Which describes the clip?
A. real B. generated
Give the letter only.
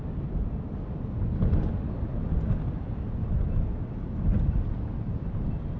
A